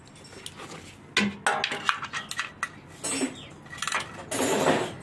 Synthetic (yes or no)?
no